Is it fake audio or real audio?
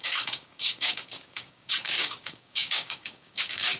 fake